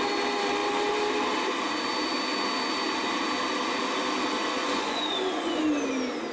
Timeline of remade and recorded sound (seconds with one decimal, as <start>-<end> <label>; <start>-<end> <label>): 0.0-4.6 recorded; 4.6-5.6 remade; 5.6-6.3 recorded